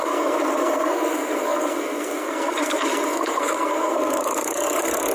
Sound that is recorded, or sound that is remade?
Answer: remade